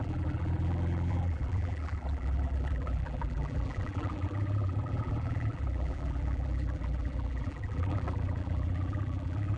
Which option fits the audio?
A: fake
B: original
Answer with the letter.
A